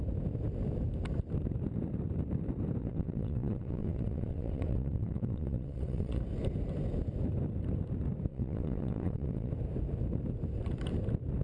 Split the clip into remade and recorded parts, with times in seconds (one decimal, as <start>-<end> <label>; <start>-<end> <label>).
0.0-2.8 recorded; 2.8-6.2 remade; 6.2-8.3 recorded; 8.3-9.5 remade; 9.5-11.4 recorded